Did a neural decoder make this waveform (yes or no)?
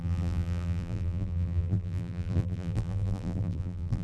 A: yes